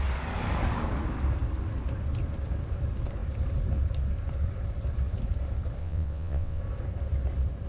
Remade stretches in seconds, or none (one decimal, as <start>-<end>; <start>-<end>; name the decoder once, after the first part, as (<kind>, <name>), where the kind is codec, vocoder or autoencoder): 5.8-6.6 (vocoder, WaveNeXt)